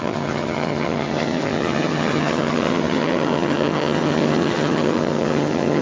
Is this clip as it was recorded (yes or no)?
no